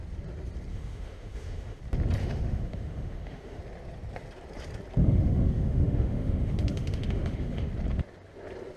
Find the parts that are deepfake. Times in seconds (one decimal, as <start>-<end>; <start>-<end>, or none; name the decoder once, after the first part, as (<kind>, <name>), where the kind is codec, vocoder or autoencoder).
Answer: 0.7-1.8 (autoencoder, DAC-VAE); 2.2-3.6; 5.0-7.7